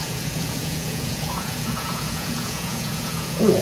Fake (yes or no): yes